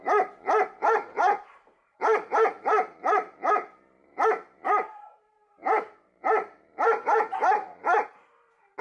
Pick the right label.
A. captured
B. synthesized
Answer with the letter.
B